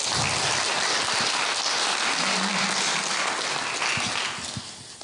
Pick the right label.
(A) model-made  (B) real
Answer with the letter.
B